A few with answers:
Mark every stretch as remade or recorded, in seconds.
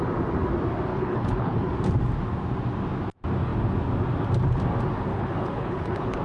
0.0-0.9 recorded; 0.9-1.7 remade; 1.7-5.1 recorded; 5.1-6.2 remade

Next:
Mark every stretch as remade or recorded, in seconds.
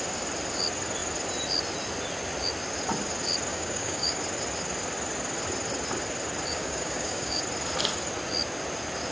0.0-3.5 recorded; 3.5-4.2 remade; 4.2-6.5 recorded; 6.5-7.4 remade; 7.4-9.1 recorded